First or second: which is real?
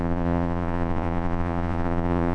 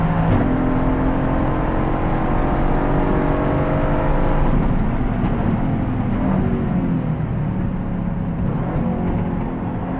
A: second